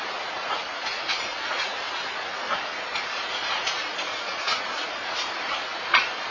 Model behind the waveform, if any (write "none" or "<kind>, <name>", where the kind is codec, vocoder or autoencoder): vocoder, Vocos